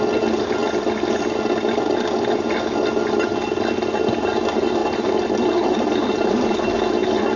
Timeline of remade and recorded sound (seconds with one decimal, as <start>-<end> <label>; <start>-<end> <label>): 0.0-7.4 recorded